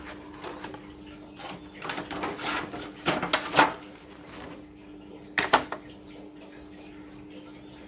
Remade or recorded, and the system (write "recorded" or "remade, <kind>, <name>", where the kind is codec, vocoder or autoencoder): recorded